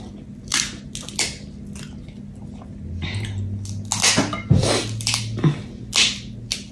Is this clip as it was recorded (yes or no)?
yes